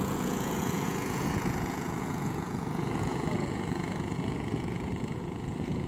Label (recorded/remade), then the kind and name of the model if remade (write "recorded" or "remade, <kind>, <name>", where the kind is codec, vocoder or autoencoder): remade, vocoder, Vocos